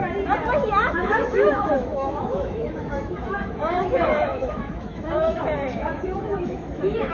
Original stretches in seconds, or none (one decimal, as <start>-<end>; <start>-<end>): 0.0-0.5